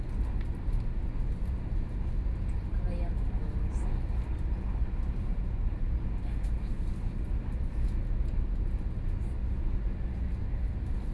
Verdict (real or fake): real